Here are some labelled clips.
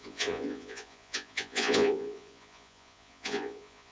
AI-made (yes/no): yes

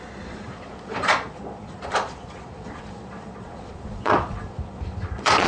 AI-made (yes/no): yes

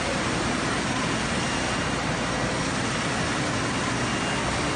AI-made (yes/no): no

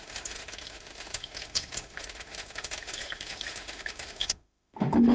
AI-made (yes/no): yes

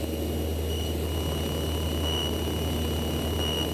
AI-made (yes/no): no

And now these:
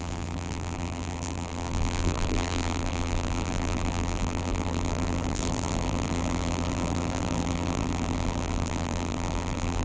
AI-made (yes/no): yes